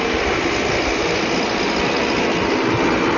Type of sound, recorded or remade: recorded